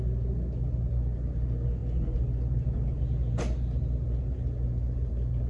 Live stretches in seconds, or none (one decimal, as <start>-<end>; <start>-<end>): 0.0-5.5